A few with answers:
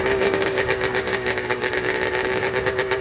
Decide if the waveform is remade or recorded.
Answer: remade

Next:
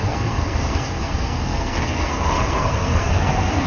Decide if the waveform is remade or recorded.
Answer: remade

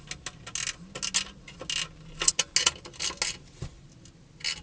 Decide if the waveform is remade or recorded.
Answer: recorded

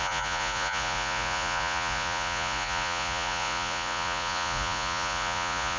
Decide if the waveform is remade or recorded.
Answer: remade